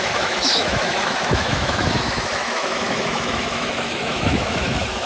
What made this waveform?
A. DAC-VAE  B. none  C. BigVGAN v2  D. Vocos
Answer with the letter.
A